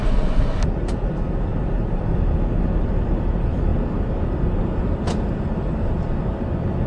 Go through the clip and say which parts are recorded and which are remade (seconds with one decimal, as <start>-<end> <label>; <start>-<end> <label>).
0.0-1.5 recorded; 1.5-2.0 remade; 2.0-6.9 recorded